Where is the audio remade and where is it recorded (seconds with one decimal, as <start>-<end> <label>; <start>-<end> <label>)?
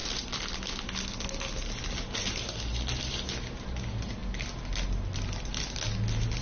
0.0-6.4 recorded